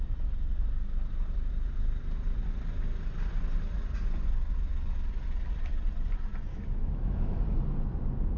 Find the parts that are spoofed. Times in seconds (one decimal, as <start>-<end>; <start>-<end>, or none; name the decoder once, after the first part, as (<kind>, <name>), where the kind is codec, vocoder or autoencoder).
6.5-7.4 (autoencoder, DAC-VAE)

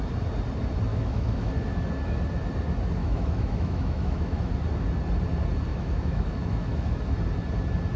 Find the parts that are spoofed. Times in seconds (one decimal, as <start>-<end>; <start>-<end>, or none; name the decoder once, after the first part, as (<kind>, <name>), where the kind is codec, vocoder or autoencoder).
0.9-1.5 (autoencoder, DAC-VAE); 3.0-4.5; 5.7-7.0

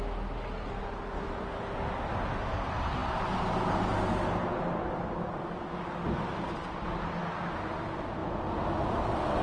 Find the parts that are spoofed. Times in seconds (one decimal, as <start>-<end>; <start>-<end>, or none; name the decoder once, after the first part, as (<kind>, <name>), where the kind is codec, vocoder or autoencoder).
none

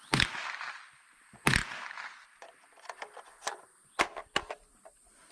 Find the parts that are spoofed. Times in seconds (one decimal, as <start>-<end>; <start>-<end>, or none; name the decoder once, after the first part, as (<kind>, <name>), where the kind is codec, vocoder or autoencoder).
none